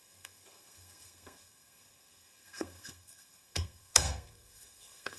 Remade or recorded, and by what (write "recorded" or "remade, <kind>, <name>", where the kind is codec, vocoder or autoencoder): remade, codec, SNAC